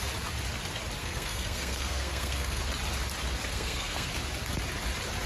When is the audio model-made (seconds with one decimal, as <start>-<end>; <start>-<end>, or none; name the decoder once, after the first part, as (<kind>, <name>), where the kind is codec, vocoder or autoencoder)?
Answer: 1.0-2.6 (codec, SNAC); 3.5-4.1

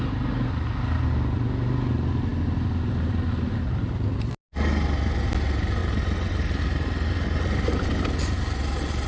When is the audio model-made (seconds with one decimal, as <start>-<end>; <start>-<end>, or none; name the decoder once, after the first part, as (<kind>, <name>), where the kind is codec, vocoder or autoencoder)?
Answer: none

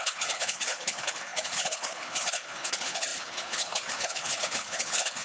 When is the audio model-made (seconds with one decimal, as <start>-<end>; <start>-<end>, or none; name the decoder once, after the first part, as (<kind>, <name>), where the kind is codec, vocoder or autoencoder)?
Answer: 0.0-5.2 (codec, HILCodec)

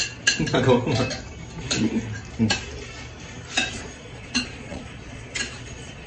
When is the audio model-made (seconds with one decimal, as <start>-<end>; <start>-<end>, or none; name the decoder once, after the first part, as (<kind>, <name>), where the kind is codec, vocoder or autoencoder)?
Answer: 3.7-6.1 (vocoder, Vocos)

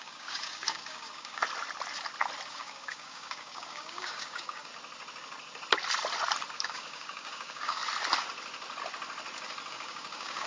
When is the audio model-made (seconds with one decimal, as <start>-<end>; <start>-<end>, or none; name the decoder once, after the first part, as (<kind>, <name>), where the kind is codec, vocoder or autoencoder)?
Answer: 0.0-1.4 (codec, DAC); 2.5-4.7; 6.5-7.8; 9.7-10.5

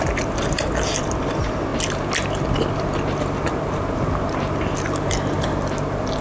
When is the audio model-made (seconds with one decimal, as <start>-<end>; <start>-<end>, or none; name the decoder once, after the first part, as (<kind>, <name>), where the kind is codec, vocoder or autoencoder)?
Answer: none